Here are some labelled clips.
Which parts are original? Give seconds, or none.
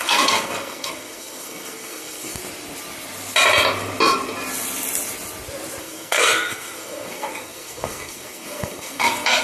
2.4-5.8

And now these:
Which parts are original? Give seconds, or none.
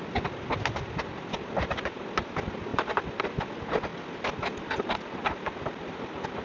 0.0-6.4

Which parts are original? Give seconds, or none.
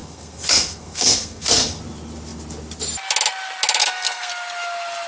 1.8-3.8; 4.3-5.1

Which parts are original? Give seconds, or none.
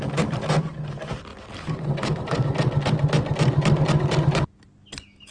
0.0-5.3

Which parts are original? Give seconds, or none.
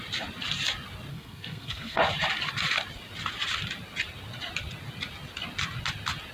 0.0-1.1; 2.0-6.3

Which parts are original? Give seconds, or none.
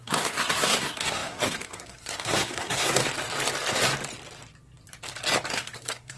3.0-5.5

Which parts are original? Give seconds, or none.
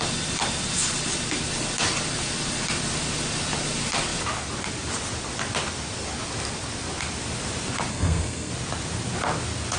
0.0-7.9; 8.5-9.8